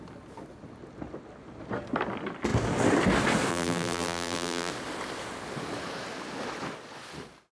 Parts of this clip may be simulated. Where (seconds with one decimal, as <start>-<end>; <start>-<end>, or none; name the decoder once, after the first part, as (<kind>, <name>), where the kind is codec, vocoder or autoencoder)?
3.5-4.7 (vocoder, BigVGAN v2)